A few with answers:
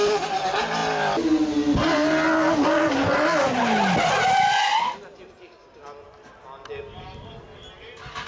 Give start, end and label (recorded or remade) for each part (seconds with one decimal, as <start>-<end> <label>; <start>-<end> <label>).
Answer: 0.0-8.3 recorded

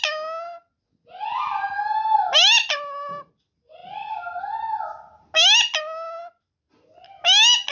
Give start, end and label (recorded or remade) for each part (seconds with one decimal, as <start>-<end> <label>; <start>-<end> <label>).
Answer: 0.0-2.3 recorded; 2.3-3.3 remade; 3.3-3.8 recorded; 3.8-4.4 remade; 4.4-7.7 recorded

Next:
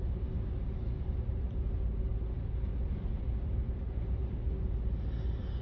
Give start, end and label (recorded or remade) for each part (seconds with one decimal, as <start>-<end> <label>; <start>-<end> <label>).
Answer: 0.0-1.3 recorded; 1.3-2.0 remade; 2.0-5.6 recorded

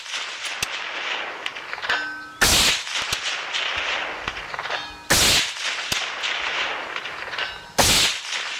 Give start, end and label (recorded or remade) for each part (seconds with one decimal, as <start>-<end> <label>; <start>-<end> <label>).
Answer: 0.0-8.6 recorded

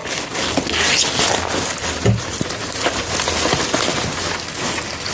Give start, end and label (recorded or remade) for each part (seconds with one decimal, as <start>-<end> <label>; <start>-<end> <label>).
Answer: 0.0-5.1 recorded